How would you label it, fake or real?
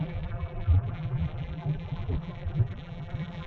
fake